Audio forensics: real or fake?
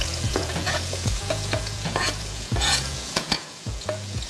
fake